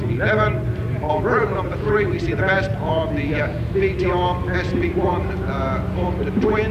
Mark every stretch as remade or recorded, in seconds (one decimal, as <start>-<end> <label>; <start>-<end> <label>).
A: 0.0-6.7 recorded

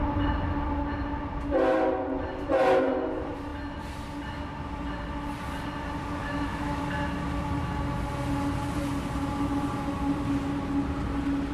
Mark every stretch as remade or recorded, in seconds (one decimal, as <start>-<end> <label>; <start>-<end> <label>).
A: 0.0-6.2 recorded; 6.2-6.8 remade; 6.8-11.5 recorded

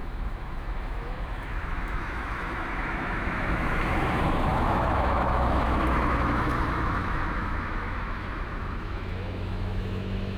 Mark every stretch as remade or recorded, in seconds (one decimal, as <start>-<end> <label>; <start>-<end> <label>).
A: 0.0-10.4 remade

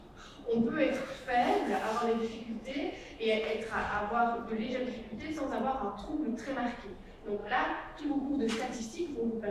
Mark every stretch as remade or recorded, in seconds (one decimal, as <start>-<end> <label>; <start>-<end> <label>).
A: 0.0-0.5 recorded; 0.5-3.2 remade; 3.2-3.8 recorded; 3.8-4.4 remade; 4.4-7.4 recorded; 7.4-8.8 remade; 8.8-9.5 recorded

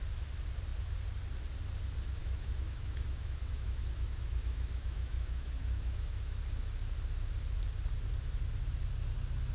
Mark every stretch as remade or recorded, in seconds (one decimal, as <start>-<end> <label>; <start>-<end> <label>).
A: 0.0-2.2 recorded; 2.2-6.4 remade; 6.4-9.5 recorded